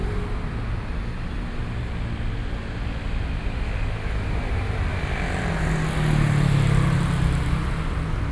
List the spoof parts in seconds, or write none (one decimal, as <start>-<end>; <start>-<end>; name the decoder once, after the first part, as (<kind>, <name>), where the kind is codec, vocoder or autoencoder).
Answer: 4.9-5.4 (vocoder, BigVGAN v2)